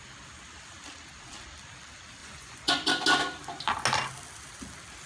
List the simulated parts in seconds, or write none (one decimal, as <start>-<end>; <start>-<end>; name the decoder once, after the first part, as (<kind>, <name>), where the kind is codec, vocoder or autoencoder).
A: 2.2-2.9 (vocoder, Vocos)